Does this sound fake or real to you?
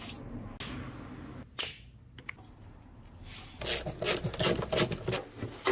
real